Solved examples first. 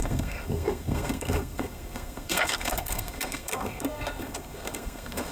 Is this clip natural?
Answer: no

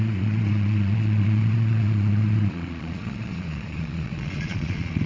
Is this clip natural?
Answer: no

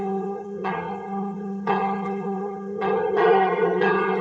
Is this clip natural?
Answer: no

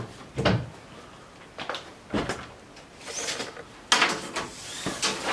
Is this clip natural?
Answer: yes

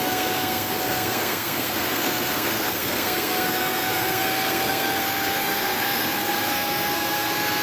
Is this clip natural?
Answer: no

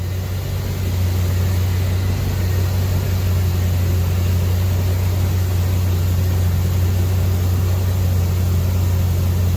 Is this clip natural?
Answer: yes